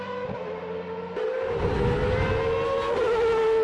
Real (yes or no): yes